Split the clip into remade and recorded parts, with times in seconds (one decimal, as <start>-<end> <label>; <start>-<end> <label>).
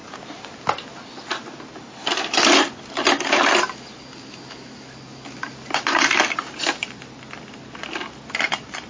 0.0-8.9 recorded